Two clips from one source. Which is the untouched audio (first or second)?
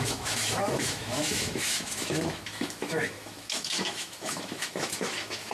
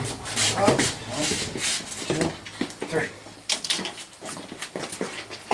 second